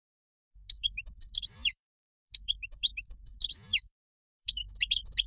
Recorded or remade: remade